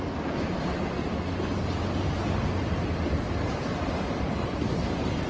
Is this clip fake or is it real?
real